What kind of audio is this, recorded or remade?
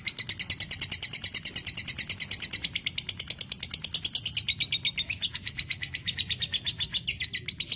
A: recorded